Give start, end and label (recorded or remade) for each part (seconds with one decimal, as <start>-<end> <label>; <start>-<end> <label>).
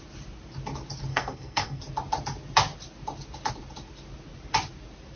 0.0-1.1 recorded; 1.1-1.8 remade; 1.8-5.2 recorded